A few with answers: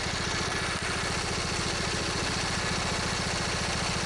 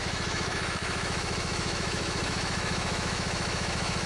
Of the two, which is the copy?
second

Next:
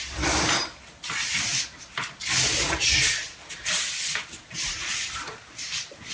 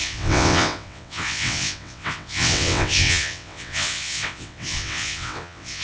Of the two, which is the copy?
second